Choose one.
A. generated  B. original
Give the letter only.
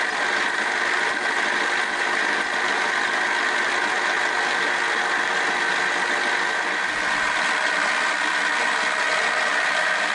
B